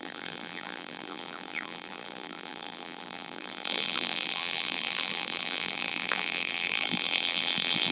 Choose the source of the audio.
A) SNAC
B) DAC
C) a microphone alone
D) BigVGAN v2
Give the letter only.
D